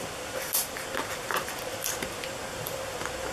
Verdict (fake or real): real